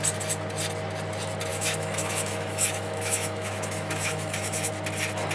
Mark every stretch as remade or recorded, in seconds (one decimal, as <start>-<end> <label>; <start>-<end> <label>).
0.0-1.5 recorded; 1.5-4.7 remade; 4.7-5.3 recorded